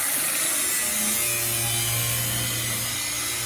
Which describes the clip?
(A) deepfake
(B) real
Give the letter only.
B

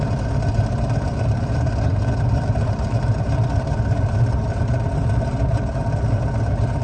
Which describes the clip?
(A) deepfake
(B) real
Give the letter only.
A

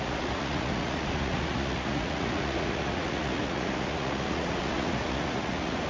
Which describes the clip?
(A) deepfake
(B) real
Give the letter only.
A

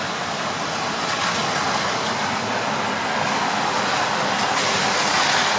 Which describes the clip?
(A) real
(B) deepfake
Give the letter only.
A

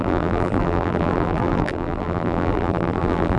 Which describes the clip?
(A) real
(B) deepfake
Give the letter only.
B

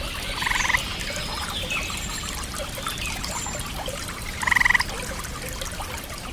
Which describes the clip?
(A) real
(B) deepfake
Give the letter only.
A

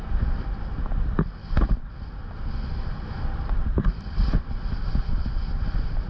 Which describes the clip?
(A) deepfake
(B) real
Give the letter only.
B